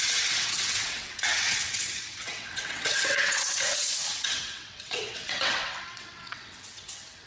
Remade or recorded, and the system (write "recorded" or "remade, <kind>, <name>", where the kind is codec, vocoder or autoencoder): remade, vocoder, WaveNeXt